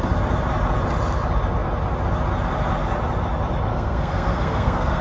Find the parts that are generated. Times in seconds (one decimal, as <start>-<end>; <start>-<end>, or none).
3.7-5.0